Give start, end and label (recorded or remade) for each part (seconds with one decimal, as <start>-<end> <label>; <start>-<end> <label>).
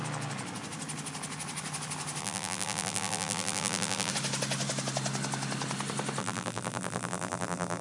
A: 0.0-2.2 recorded; 2.2-4.1 remade; 4.1-6.2 recorded; 6.2-7.8 remade